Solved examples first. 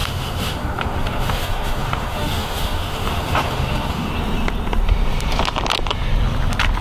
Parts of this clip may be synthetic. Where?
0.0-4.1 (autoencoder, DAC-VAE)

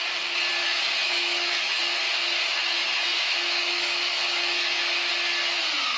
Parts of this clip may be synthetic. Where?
0.6-1.8 (autoencoder, DAC-VAE); 2.6-5.1

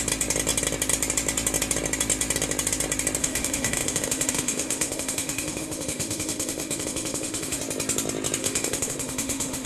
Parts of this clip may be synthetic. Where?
3.2-7.6 (autoencoder, DAC-VAE); 8.4-9.7